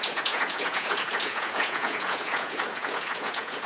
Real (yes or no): no